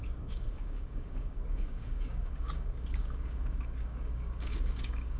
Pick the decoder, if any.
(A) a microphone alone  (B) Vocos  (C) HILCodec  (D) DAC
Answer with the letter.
D